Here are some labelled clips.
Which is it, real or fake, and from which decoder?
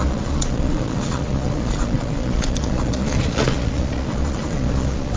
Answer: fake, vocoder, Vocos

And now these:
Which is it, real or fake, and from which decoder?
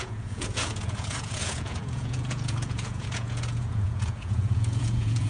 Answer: fake, vocoder, Vocos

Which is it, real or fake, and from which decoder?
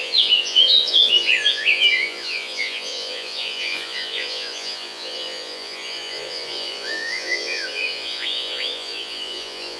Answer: fake, vocoder, Vocos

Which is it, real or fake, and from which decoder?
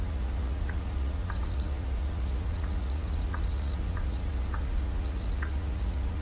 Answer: fake, vocoder, Vocos